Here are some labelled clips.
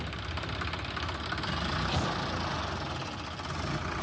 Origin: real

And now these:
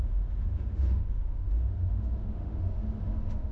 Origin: fake